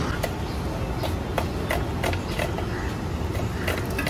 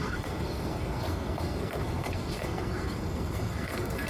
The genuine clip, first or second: first